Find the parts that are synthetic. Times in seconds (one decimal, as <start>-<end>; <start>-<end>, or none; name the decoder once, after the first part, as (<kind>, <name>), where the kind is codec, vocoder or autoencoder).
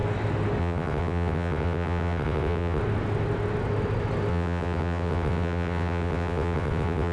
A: 0.6-2.8 (vocoder, WaveNeXt); 4.3-7.1